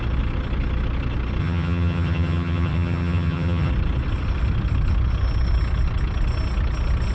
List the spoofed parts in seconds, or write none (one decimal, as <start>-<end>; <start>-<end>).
1.4-3.7